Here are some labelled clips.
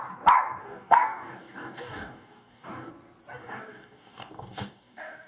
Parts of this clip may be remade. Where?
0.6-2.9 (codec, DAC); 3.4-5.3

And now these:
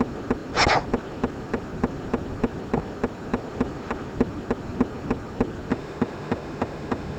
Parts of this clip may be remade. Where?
5.7-7.2 (autoencoder, DAC-VAE)